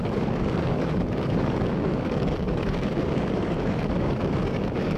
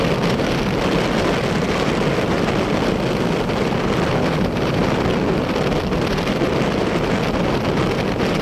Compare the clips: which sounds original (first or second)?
second